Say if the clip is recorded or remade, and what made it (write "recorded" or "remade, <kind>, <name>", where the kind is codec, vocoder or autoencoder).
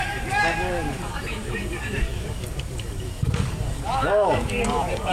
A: remade, codec, DAC